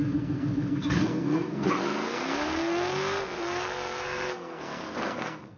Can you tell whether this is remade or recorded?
remade